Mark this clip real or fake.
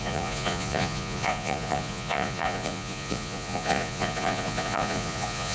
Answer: fake